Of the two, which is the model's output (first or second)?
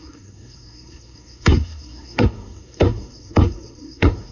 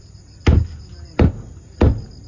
first